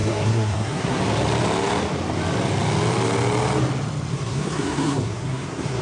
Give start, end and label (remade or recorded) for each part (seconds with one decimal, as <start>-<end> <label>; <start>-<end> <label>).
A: 0.0-1.0 remade; 1.0-4.1 recorded; 4.1-5.8 remade